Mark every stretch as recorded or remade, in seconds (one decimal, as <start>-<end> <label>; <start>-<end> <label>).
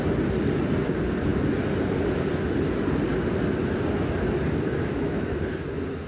0.0-4.7 recorded; 4.7-5.4 remade; 5.4-6.1 recorded